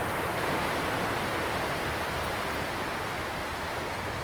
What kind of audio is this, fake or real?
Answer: real